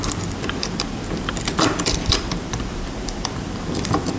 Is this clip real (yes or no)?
no